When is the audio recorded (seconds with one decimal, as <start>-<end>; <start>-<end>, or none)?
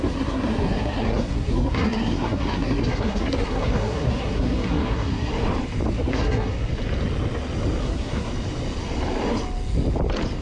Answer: 5.3-5.9; 6.7-7.8; 8.3-10.4